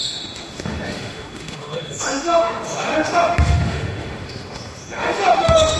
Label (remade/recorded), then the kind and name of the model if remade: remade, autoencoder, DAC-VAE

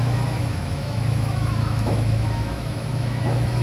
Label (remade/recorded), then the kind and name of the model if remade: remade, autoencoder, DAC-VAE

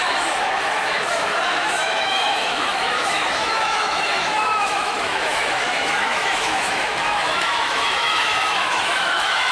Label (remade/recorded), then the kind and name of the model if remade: remade, autoencoder, DAC-VAE